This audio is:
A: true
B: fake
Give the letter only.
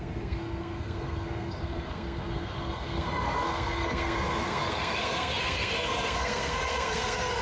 B